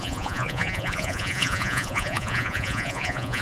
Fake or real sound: fake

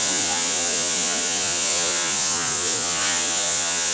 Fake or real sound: fake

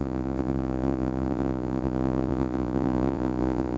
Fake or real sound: fake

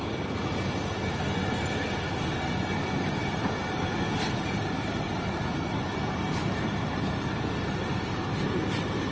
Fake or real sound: real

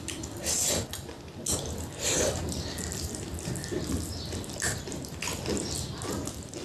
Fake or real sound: real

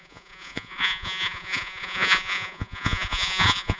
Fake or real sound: fake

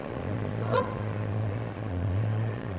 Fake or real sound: fake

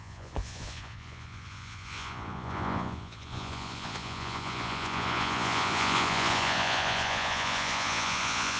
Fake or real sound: fake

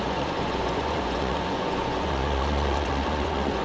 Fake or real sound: fake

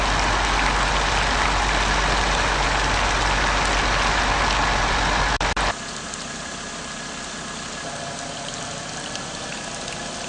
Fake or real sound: real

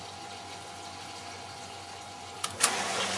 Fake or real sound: fake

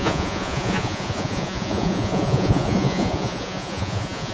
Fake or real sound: fake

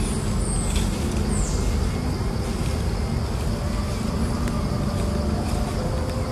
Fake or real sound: real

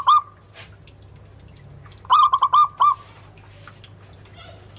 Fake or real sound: real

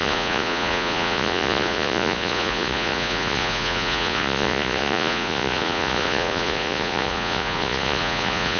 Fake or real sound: fake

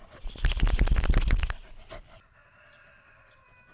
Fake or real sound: real